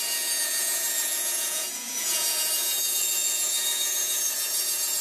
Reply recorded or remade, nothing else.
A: remade